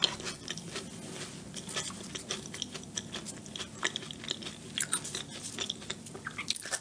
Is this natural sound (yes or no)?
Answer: yes